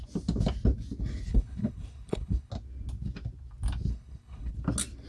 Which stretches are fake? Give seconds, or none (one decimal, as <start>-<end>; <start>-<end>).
1.3-2.5; 3.9-4.5